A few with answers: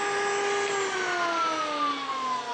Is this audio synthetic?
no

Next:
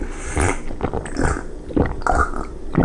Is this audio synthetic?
no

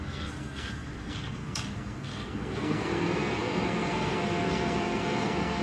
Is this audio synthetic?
yes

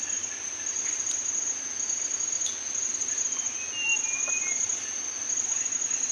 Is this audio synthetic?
no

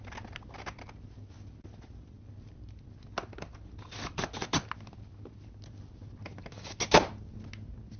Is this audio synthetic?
no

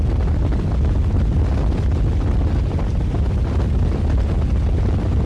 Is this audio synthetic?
no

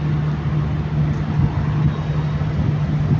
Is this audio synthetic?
no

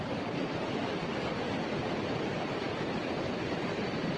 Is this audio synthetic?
no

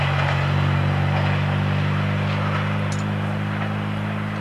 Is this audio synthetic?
no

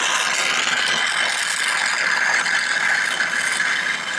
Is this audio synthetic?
no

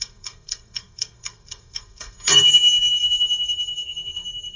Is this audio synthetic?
yes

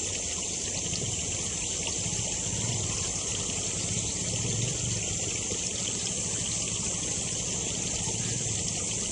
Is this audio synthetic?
no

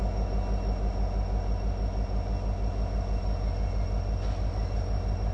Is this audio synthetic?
no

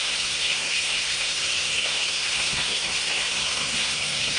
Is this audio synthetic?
yes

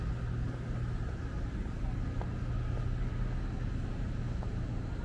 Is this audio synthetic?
no